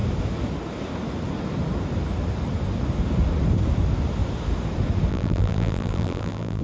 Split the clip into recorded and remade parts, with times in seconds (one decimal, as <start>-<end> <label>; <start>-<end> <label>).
0.0-5.1 recorded; 5.1-6.6 remade